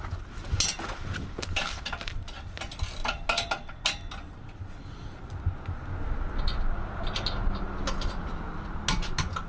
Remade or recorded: recorded